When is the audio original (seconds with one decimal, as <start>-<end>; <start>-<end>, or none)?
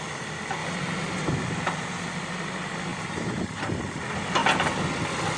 0.0-0.6; 1.3-2.9; 3.7-5.4